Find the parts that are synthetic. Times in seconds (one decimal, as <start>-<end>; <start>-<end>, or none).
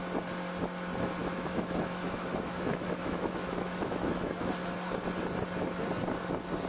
1.2-4.5